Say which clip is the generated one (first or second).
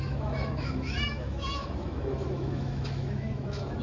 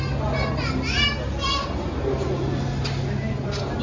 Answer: first